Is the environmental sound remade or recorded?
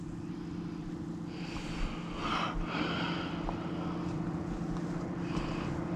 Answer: recorded